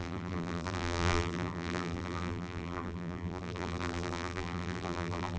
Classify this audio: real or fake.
fake